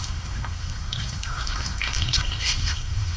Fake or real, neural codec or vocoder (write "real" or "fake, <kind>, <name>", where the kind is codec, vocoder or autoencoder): fake, codec, SNAC